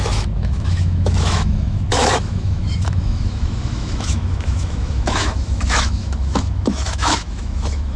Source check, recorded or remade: remade